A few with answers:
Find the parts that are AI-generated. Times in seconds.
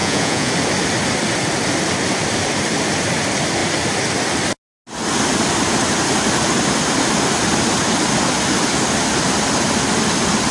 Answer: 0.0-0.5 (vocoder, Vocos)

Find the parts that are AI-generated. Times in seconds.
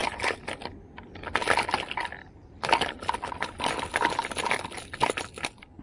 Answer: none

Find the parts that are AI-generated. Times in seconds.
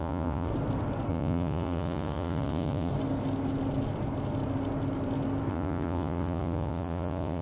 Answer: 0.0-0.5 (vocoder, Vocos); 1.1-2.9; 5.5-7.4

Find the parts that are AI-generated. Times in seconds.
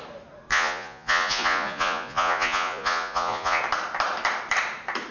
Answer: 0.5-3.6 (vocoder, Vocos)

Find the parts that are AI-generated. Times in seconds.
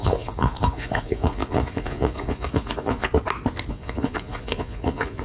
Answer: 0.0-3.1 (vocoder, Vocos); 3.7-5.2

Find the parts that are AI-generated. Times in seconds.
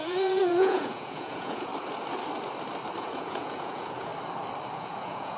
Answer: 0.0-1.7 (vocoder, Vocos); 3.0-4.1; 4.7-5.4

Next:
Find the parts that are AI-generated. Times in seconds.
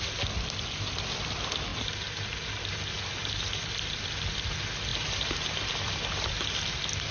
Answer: none